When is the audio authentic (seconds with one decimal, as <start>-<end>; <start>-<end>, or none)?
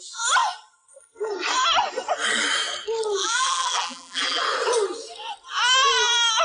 0.0-3.2; 4.4-6.4